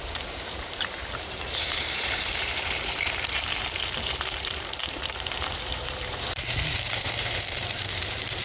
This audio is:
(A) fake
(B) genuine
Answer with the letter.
A